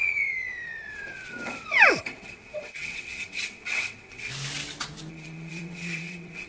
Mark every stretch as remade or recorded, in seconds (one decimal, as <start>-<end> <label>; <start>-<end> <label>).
0.0-4.3 remade; 4.3-5.1 recorded; 5.1-6.5 remade